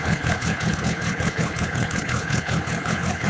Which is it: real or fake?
fake